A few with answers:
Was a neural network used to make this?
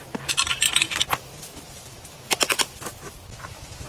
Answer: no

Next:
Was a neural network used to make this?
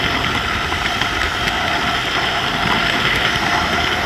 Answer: no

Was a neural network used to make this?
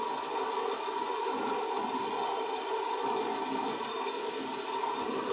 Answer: no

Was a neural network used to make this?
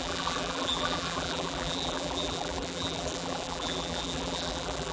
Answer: yes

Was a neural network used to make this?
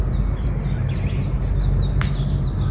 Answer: no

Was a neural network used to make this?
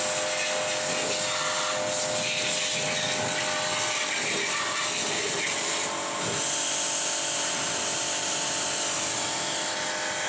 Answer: no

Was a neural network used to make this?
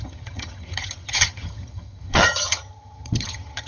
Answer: yes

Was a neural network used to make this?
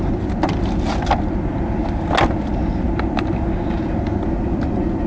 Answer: no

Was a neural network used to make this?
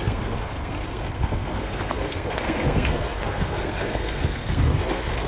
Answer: yes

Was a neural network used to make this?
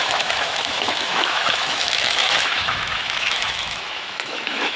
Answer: yes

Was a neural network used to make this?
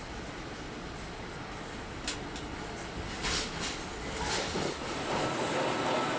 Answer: no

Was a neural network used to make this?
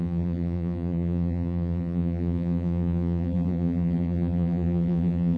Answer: yes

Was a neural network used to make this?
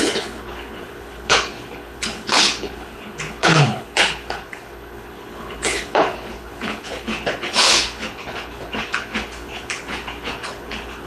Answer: yes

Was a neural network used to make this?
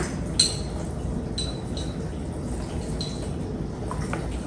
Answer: no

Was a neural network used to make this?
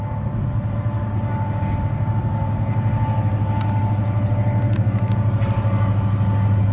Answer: no